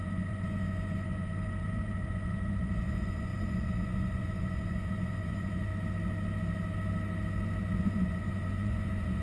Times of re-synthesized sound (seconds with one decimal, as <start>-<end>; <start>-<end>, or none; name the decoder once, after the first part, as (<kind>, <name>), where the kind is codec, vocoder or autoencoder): 0.0-5.7 (vocoder, Vocos); 7.8-9.2